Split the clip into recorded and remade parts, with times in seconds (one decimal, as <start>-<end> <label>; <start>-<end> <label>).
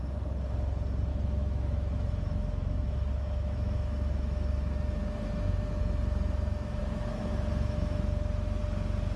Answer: 0.0-1.1 recorded; 1.1-5.8 remade; 5.8-6.8 recorded; 6.8-8.6 remade; 8.6-9.2 recorded